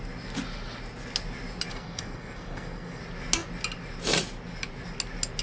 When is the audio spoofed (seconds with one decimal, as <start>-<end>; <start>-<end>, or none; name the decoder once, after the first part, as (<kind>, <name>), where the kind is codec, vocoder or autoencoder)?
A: 1.7-3.0 (codec, SNAC)